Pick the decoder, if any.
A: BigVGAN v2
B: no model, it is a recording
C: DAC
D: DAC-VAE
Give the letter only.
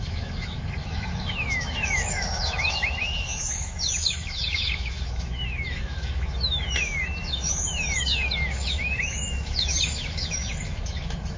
D